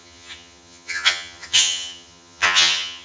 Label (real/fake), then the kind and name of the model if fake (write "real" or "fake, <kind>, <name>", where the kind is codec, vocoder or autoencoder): fake, vocoder, HiFi-GAN